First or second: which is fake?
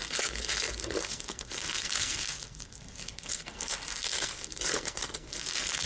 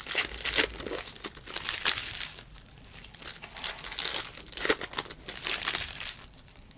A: first